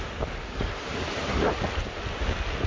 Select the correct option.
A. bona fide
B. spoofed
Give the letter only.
A